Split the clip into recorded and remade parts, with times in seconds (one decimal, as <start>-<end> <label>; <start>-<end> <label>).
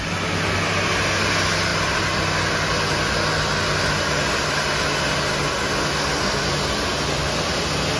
0.0-8.0 recorded